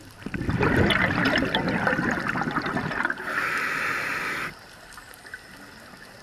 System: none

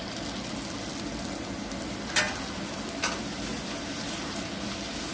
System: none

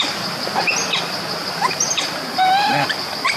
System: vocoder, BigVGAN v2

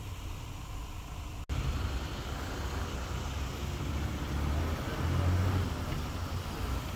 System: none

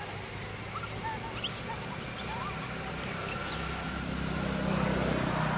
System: none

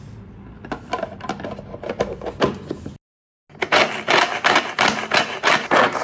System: none